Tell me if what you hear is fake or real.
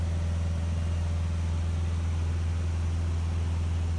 real